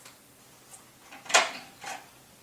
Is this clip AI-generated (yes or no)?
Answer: no